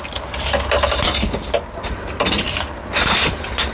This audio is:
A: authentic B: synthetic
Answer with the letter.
A